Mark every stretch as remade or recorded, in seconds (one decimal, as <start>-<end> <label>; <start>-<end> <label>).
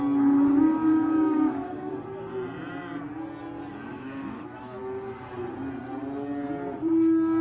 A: 0.0-0.9 recorded; 0.9-1.9 remade; 1.9-3.9 recorded; 3.9-4.8 remade; 4.8-7.4 recorded